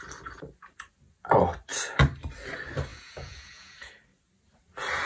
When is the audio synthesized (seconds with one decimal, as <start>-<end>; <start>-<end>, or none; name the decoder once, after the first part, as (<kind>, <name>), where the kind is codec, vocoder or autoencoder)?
2.9-3.9 (vocoder, Vocos)